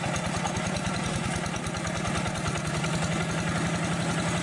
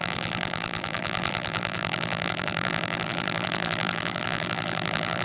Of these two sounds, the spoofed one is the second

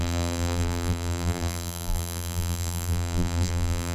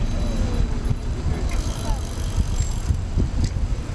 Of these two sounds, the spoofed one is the first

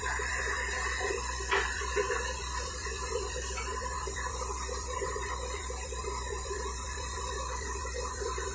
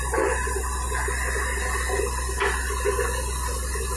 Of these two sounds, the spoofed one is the first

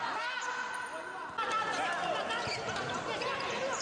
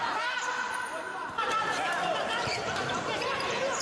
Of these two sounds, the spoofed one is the second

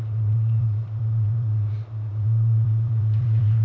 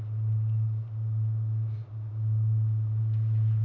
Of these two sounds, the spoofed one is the first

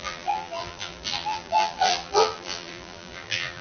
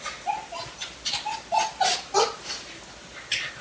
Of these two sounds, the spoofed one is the first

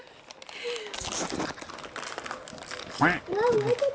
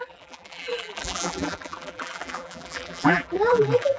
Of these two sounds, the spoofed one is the second